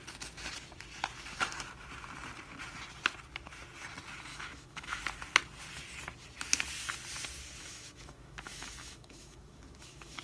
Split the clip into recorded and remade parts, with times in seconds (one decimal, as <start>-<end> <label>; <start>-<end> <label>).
0.0-4.3 recorded; 4.3-5.0 remade; 5.0-7.6 recorded; 7.6-10.2 remade